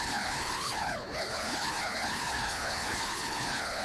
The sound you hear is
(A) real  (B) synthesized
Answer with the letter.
B